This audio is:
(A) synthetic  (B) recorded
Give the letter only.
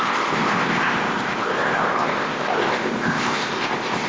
A